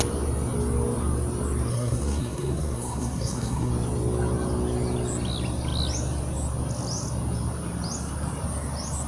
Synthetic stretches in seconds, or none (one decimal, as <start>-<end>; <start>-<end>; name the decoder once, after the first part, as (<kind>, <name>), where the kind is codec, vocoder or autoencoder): 1.7-3.7 (codec, SNAC)

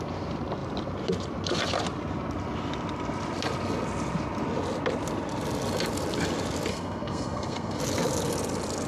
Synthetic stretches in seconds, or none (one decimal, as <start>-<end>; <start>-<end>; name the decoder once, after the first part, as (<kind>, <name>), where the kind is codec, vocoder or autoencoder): 6.7-7.8 (codec, SNAC)

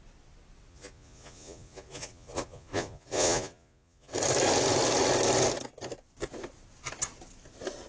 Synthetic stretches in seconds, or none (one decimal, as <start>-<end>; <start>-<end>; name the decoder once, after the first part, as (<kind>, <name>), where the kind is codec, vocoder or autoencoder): 0.7-4.1 (vocoder, Vocos)

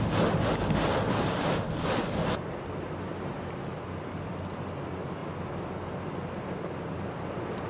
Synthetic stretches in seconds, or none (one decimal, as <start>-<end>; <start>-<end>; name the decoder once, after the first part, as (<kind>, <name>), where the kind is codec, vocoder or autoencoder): none